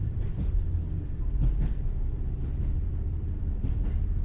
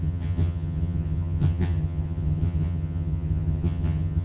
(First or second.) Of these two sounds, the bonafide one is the first